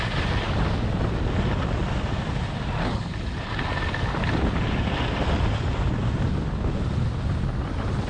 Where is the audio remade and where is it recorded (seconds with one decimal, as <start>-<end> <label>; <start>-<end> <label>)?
0.0-8.1 recorded